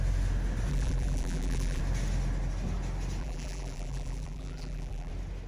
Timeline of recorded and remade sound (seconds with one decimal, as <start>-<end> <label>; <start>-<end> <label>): 0.0-0.7 recorded; 0.7-1.8 remade; 1.8-3.2 recorded; 3.2-5.1 remade; 5.1-5.5 recorded